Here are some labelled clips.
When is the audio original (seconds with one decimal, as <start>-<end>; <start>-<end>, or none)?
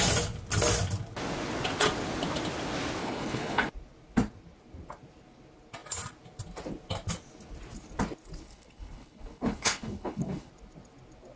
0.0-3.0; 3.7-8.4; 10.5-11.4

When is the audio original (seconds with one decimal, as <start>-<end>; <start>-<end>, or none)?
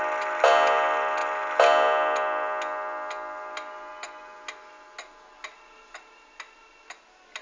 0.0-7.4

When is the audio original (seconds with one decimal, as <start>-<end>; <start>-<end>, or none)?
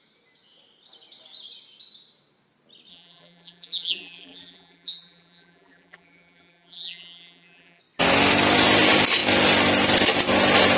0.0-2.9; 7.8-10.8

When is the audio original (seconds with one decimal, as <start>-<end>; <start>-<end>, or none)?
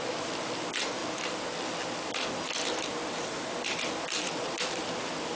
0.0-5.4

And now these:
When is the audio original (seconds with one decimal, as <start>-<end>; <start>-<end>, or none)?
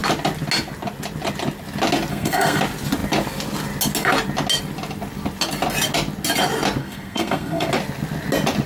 0.0-2.1; 2.6-6.8; 7.7-8.7